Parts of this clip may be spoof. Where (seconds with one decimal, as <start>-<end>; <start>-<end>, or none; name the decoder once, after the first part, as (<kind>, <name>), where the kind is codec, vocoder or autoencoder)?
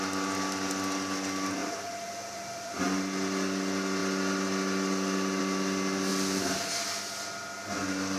1.6-2.8 (vocoder, BigVGAN v2)